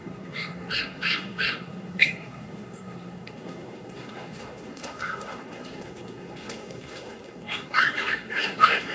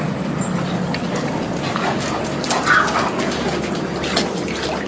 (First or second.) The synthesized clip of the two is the first